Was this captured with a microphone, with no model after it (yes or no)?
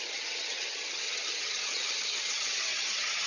no